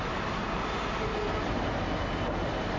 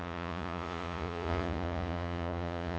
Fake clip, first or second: second